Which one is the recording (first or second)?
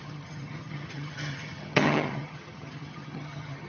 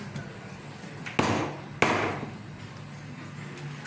second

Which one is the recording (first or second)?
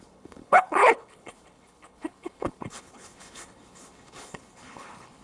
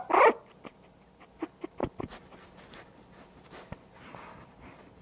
second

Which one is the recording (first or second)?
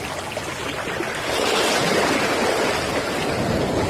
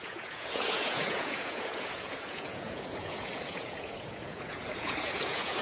first